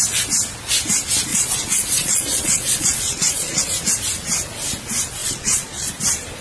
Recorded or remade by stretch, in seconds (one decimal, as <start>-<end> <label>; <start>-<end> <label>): 0.0-1.3 recorded; 1.3-3.6 remade; 3.6-5.2 recorded; 5.2-5.9 remade; 5.9-6.4 recorded